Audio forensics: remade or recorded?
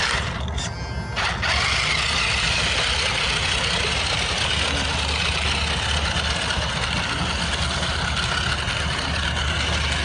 recorded